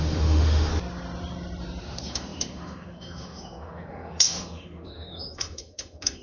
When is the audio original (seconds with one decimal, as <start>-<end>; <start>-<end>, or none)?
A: 0.7-1.8